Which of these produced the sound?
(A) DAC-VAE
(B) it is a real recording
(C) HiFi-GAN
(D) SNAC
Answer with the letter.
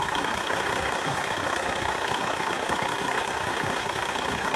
D